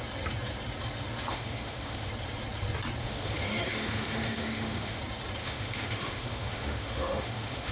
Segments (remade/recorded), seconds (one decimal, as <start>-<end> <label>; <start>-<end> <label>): 0.0-1.3 recorded; 1.3-2.1 remade; 2.1-3.0 recorded; 3.0-5.0 remade; 5.0-5.4 recorded; 5.4-7.7 remade